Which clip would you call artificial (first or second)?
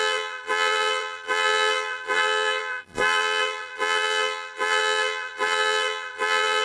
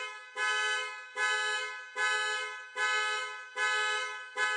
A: first